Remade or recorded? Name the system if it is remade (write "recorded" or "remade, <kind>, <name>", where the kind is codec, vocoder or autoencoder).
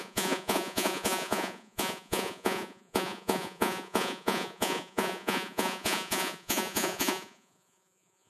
remade, vocoder, Vocos